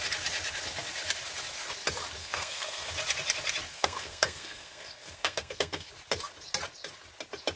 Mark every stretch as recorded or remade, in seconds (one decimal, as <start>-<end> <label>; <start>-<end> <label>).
0.0-2.2 recorded; 2.2-2.9 remade; 2.9-3.7 recorded; 3.7-5.9 remade; 5.9-7.6 recorded